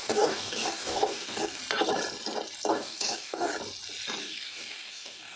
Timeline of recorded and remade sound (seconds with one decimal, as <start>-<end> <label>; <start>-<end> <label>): 0.0-1.6 remade; 1.6-2.7 recorded; 2.7-3.5 remade; 3.5-4.2 recorded; 4.2-5.4 remade